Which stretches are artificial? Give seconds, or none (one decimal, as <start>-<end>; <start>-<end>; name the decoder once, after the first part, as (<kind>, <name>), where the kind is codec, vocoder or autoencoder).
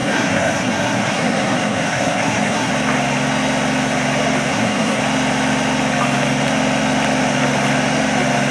0.0-2.7 (codec, SNAC); 4.5-5.0